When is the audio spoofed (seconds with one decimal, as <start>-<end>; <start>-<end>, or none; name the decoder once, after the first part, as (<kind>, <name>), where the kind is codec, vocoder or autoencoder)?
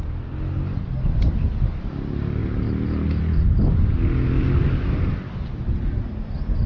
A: none